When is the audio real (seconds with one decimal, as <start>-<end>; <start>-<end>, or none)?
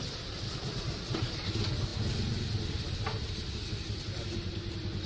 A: 0.0-5.1